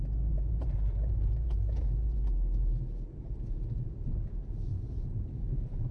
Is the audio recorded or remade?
remade